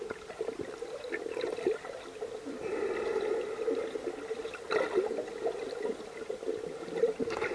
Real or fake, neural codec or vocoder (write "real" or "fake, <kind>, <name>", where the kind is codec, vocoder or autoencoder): real